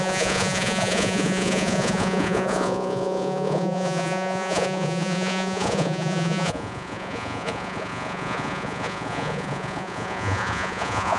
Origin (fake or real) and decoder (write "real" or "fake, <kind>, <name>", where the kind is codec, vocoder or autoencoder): fake, vocoder, Vocos